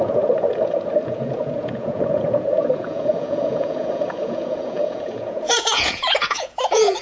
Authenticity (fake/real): fake